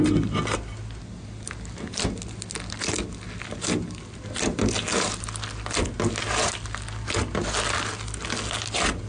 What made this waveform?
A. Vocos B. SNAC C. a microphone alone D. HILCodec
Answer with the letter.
C